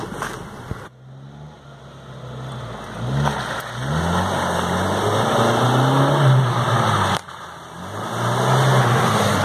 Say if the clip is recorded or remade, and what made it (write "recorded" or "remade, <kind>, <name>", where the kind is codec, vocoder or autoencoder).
recorded